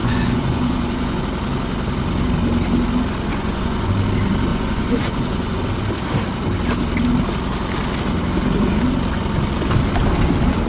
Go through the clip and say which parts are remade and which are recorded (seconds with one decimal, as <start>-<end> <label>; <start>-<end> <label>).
0.0-1.2 remade; 1.2-3.3 recorded; 3.3-3.9 remade; 3.9-4.5 recorded; 4.5-5.6 remade; 5.6-10.7 recorded